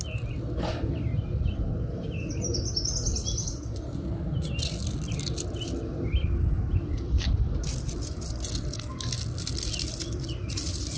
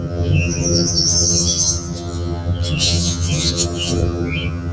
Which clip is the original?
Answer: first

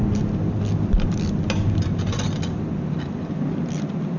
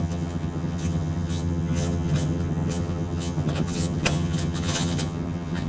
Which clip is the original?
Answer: first